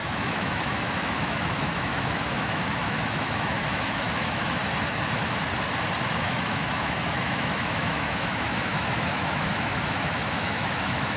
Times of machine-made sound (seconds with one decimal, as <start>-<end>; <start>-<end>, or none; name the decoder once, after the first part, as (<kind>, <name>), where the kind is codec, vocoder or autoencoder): 0.0-4.6 (autoencoder, DAC-VAE); 6.0-11.2